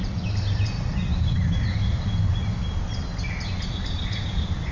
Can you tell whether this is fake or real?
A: real